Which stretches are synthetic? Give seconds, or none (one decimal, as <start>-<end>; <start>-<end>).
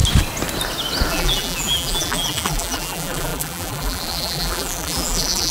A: 1.1-5.5